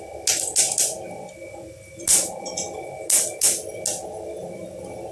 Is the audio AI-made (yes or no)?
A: no